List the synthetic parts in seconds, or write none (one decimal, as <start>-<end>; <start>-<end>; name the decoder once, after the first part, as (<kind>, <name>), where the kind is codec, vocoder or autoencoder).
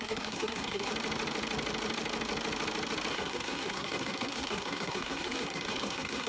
0.0-0.9 (codec, SNAC); 3.1-6.3